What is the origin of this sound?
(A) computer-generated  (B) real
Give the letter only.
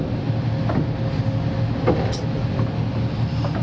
B